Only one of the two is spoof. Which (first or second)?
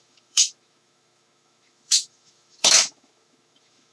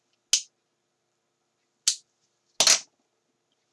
first